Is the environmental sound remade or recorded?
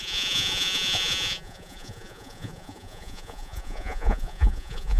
remade